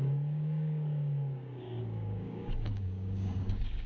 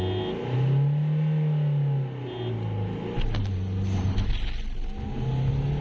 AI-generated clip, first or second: first